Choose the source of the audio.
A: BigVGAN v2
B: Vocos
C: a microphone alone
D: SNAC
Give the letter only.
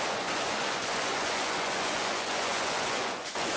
B